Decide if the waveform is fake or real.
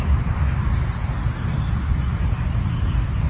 fake